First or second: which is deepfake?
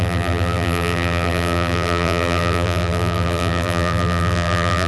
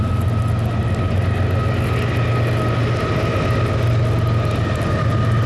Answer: first